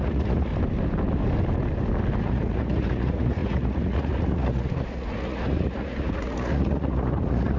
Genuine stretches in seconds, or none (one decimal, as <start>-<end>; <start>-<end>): 0.5-2.2